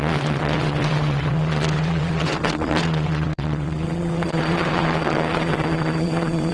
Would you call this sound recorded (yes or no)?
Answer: no